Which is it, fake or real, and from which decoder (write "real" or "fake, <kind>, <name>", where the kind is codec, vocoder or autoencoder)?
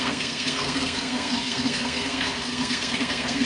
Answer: fake, codec, SNAC